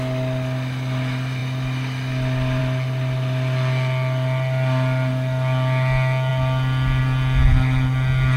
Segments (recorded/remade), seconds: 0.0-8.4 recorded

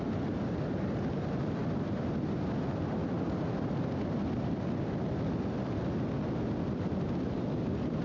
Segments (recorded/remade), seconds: 0.0-8.0 recorded

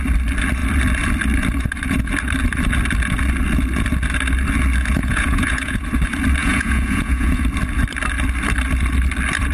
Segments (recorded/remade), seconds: 0.0-5.0 recorded; 5.0-5.8 remade; 5.8-6.4 recorded; 6.4-7.4 remade; 7.4-9.5 recorded